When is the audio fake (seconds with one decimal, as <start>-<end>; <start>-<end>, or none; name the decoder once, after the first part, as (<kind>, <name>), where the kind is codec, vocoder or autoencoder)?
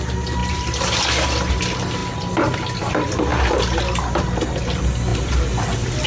5.1-6.1 (vocoder, BigVGAN v2)